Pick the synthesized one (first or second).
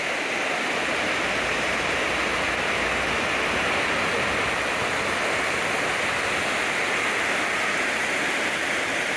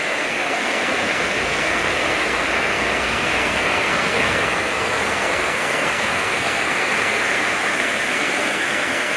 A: second